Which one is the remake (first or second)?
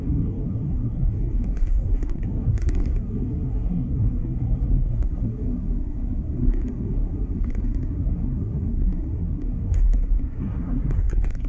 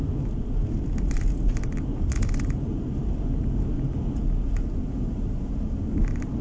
first